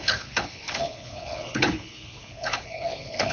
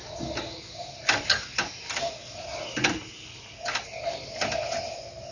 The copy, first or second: first